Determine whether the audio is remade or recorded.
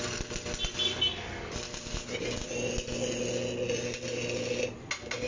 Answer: recorded